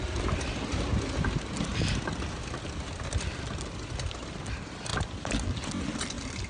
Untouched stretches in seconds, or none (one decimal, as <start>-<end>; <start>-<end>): 0.0-6.5